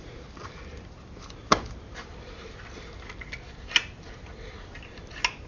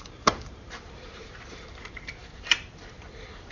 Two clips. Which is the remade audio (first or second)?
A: second